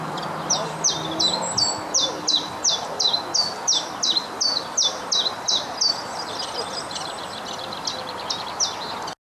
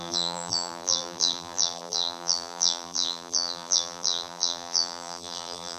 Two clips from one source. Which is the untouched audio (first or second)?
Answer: first